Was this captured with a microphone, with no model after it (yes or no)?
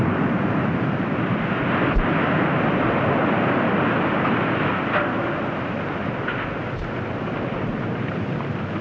yes